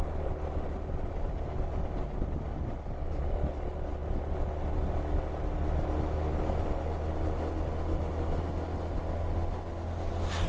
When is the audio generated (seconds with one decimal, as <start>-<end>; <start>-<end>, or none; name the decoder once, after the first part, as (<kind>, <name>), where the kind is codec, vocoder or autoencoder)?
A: none